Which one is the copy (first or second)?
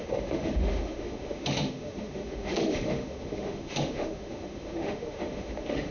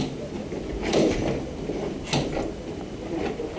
first